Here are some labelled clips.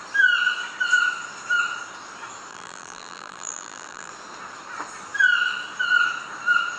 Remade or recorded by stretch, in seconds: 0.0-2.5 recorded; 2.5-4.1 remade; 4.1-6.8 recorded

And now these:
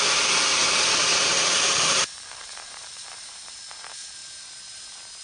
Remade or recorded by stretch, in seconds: 0.0-0.6 recorded; 0.6-3.6 remade; 3.6-5.2 recorded

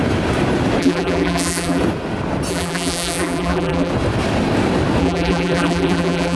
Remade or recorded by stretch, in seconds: 0.0-0.8 recorded; 0.8-1.8 remade; 1.8-2.5 recorded; 2.5-3.9 remade; 3.9-5.0 recorded; 5.0-6.4 remade

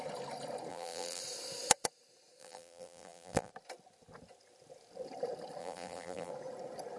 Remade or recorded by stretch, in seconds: 0.0-0.7 recorded; 0.7-1.2 remade; 1.2-2.4 recorded; 2.4-3.5 remade; 3.5-5.6 recorded; 5.6-6.3 remade; 6.3-7.0 recorded

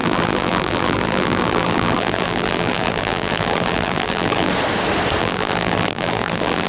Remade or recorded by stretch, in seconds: 0.0-4.5 remade; 4.5-5.2 recorded; 5.2-6.7 remade